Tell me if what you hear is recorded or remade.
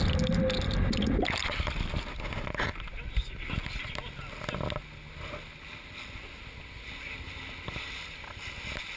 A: recorded